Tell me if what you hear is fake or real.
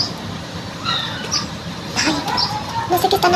real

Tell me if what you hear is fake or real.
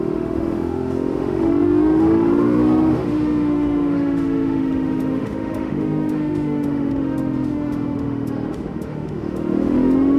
fake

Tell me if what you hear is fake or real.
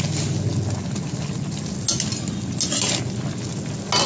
real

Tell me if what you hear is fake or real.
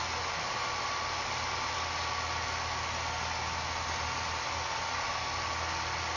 real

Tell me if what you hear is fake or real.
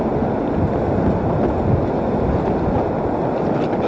real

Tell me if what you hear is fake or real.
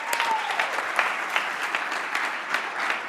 real